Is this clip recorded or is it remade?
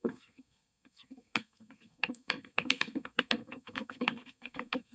remade